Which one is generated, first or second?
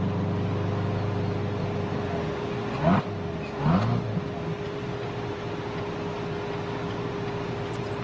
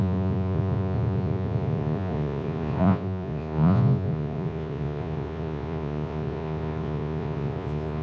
second